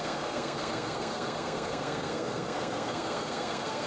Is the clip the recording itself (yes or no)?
no